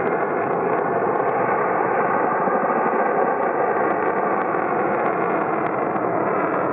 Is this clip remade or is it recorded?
recorded